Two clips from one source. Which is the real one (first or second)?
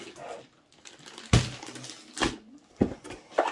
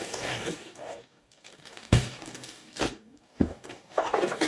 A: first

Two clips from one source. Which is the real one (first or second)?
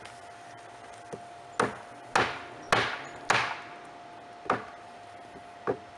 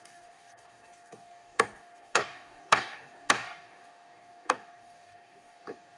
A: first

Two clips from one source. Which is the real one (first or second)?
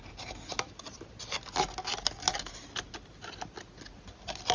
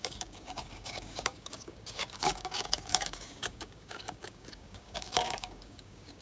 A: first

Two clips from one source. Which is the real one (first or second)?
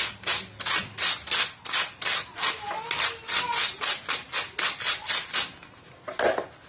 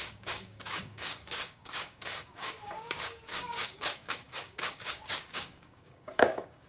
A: first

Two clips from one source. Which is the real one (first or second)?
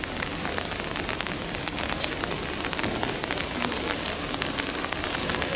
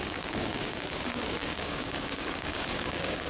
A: first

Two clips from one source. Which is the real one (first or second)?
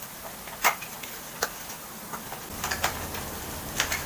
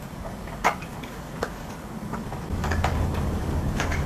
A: first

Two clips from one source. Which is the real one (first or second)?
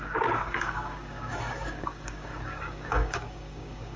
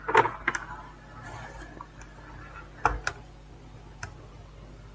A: second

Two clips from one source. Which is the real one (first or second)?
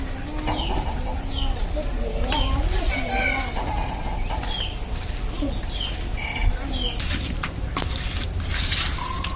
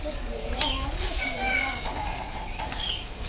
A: first